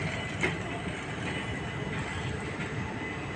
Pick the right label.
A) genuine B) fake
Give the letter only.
A